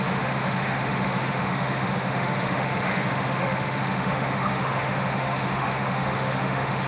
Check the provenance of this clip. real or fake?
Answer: fake